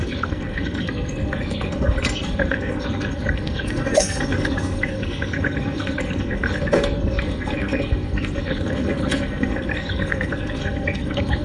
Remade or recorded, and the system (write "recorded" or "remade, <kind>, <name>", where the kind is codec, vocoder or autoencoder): remade, codec, SNAC